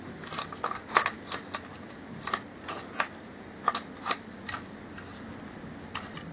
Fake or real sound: real